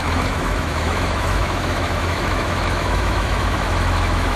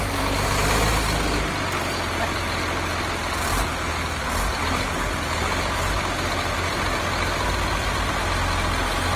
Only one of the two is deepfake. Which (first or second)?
first